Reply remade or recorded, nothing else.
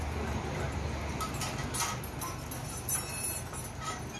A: recorded